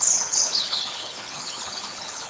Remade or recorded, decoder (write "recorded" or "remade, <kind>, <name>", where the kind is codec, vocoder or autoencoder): remade, codec, HILCodec